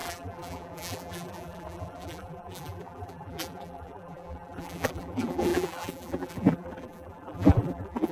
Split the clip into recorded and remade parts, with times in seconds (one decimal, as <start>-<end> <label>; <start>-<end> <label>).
0.0-8.1 remade